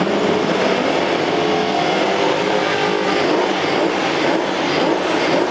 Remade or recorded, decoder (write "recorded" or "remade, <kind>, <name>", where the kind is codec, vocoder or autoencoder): recorded